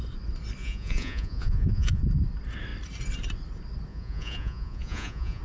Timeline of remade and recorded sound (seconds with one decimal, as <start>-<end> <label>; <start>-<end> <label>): 0.0-0.6 recorded; 0.6-2.0 remade; 2.0-3.9 recorded; 3.9-5.4 remade